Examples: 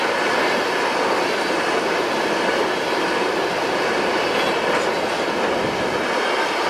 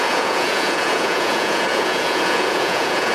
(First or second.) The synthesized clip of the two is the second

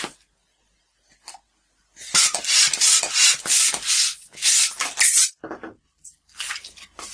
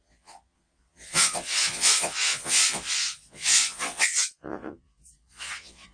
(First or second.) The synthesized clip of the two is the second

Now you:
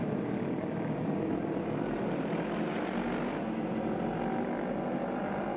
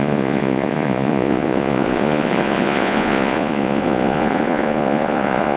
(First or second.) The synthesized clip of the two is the second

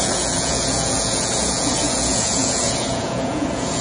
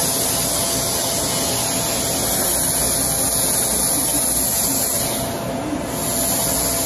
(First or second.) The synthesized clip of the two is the first